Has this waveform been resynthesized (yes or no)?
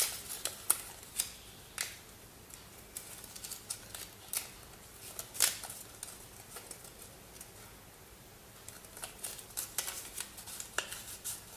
no